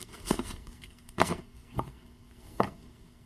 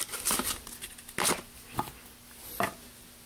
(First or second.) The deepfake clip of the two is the first